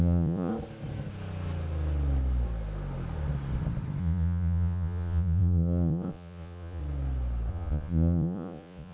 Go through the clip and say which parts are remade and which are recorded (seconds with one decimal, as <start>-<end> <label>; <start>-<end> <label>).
0.0-0.5 remade; 0.5-4.0 recorded; 4.0-6.8 remade; 6.8-7.5 recorded; 7.5-8.9 remade